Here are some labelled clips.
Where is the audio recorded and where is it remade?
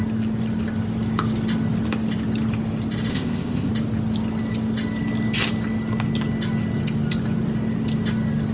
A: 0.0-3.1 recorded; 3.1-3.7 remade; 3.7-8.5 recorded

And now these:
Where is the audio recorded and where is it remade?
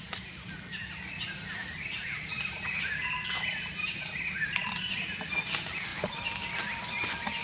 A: 0.0-1.6 recorded; 1.6-2.6 remade; 2.6-5.9 recorded; 5.9-6.9 remade; 6.9-7.4 recorded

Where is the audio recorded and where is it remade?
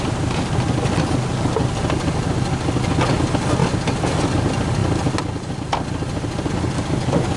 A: 0.0-7.4 recorded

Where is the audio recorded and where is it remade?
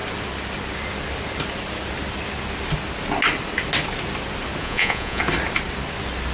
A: 0.0-4.6 recorded; 4.6-5.2 remade; 5.2-6.3 recorded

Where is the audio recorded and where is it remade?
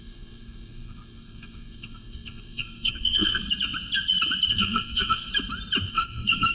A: 0.0-3.4 remade; 3.4-4.5 recorded; 4.5-5.3 remade; 5.3-5.9 recorded; 5.9-6.5 remade